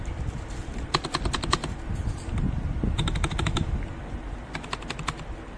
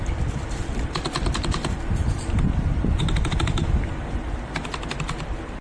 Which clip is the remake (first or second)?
second